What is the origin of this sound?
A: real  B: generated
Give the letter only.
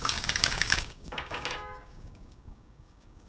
B